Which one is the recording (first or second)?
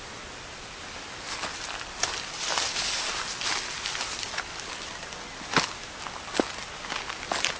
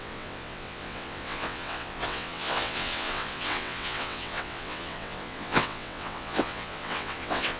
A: first